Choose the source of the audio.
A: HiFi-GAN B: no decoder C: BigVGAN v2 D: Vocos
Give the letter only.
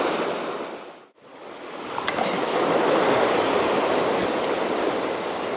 B